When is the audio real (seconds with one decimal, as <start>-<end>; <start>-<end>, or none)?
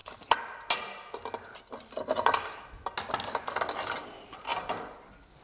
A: 0.0-5.4